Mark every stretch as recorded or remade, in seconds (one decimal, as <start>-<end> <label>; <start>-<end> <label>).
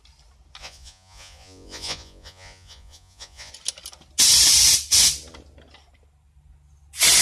0.0-0.6 recorded; 0.6-3.5 remade; 3.5-7.2 recorded